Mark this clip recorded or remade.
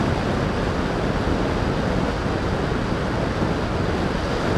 recorded